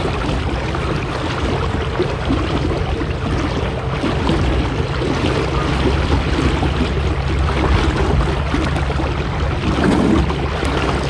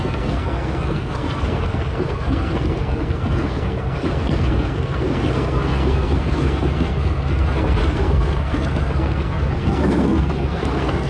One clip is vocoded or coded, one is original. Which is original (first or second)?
first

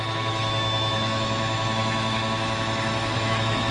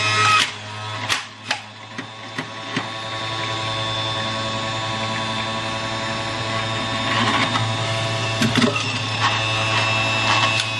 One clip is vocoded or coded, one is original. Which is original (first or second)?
second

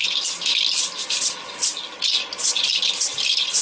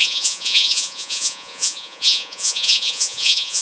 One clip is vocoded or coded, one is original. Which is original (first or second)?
first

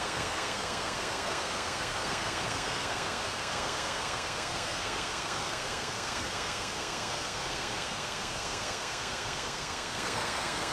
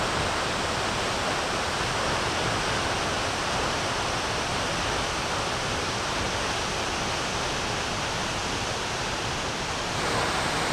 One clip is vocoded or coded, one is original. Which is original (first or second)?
second